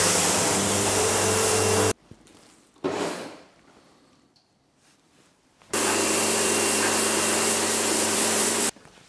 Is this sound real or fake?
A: fake